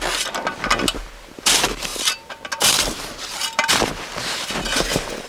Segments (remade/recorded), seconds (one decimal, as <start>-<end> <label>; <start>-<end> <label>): 0.0-5.3 recorded